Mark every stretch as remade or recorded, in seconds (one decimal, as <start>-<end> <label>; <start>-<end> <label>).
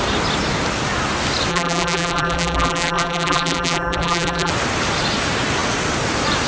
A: 0.0-1.5 recorded; 1.5-4.5 remade; 4.5-6.5 recorded